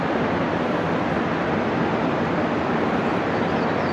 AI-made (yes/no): no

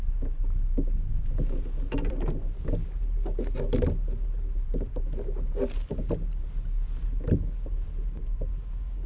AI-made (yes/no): no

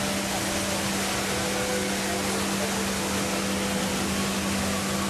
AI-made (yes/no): no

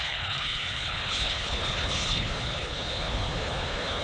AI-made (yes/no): yes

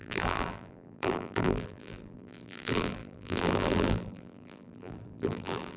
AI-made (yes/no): yes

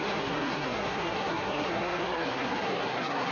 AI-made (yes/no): yes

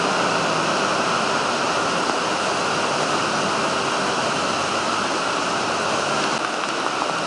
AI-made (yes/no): no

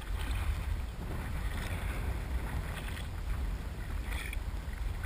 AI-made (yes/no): no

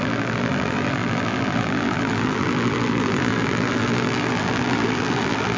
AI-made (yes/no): yes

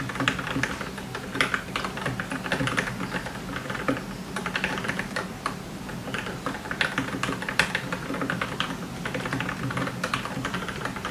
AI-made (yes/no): no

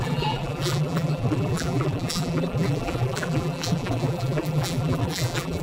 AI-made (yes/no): yes